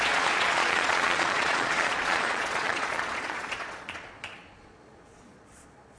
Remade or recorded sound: remade